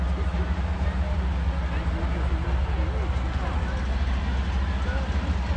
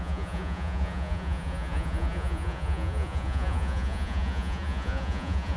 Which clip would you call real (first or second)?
first